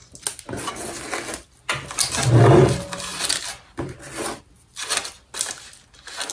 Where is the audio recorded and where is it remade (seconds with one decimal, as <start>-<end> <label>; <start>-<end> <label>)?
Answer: 0.0-6.3 recorded